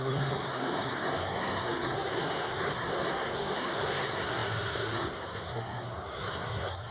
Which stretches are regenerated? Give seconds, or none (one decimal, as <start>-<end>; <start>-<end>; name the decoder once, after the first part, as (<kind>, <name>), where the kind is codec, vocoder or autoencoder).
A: 0.0-6.9 (codec, SNAC)